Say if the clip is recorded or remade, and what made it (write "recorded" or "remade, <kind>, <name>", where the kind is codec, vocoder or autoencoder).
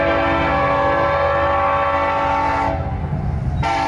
recorded